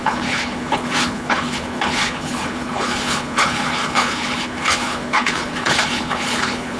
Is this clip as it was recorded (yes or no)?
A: no